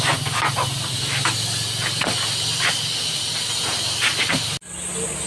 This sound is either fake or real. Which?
real